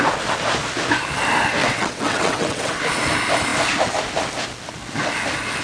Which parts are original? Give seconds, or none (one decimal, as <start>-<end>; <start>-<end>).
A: 0.0-1.6; 2.8-5.6